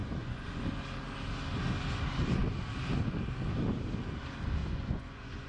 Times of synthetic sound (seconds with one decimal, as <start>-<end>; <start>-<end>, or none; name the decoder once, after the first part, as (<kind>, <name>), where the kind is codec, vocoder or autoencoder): 0.0-0.6 (vocoder, Vocos); 4.6-5.5